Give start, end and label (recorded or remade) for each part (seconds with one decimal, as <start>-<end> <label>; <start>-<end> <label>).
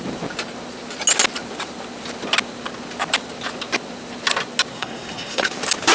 0.0-4.7 recorded; 4.7-5.5 remade; 5.5-5.9 recorded